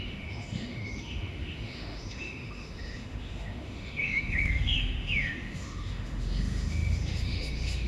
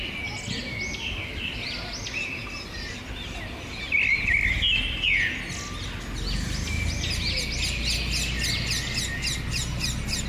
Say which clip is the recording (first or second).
second